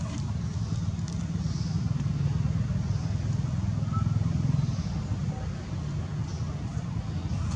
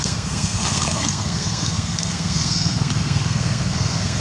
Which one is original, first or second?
first